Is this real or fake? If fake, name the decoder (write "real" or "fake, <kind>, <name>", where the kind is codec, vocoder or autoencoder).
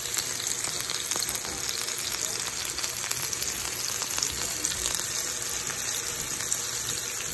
real